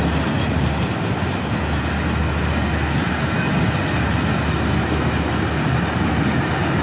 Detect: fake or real real